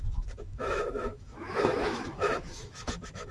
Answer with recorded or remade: remade